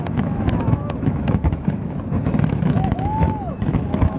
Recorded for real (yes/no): no